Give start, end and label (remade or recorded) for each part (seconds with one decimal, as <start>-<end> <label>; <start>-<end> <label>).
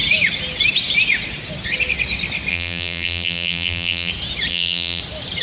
0.0-2.5 recorded; 2.5-4.1 remade; 4.1-4.5 recorded; 4.5-5.0 remade; 5.0-5.4 recorded